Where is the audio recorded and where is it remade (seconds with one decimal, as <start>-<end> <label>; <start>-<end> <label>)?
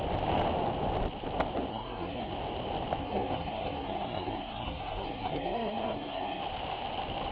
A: 0.0-1.7 recorded; 1.7-2.3 remade; 2.3-3.0 recorded; 3.0-6.4 remade; 6.4-7.3 recorded